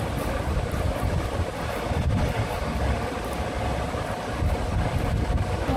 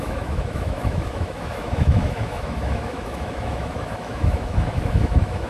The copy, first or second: second